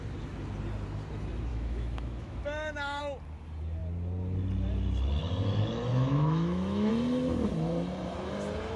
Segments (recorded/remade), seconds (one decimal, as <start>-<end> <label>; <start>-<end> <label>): 0.0-1.5 recorded; 1.5-3.0 remade; 3.0-5.9 recorded; 5.9-6.9 remade; 6.9-8.8 recorded